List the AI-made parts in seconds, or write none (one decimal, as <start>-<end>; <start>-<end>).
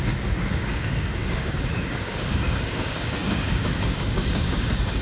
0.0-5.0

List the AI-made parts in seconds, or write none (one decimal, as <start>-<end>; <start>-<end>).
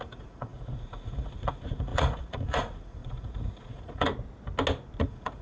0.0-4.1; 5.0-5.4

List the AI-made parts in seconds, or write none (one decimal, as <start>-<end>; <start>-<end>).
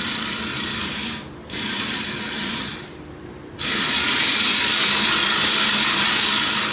0.5-4.5; 5.2-6.2